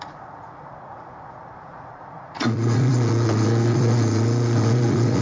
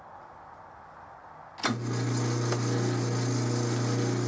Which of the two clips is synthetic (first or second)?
first